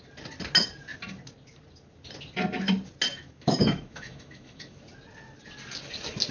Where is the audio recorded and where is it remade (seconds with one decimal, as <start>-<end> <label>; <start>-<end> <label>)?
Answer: 0.0-3.1 recorded; 3.1-4.8 remade; 4.8-6.3 recorded